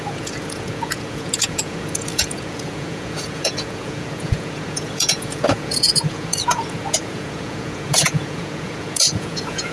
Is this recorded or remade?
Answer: remade